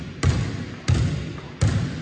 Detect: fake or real real